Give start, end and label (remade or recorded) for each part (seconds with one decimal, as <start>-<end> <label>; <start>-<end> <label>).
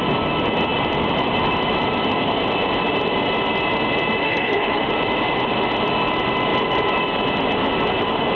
0.0-4.2 recorded; 4.2-4.9 remade; 4.9-8.4 recorded